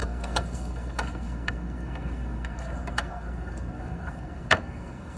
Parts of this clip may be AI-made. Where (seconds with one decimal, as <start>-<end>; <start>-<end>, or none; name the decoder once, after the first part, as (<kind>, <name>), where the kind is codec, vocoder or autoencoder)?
0.0-5.2 (codec, SNAC)